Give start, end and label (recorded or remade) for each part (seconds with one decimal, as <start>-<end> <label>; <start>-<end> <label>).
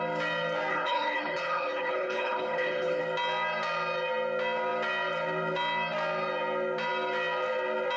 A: 0.0-0.7 recorded; 0.7-3.0 remade; 3.0-8.0 recorded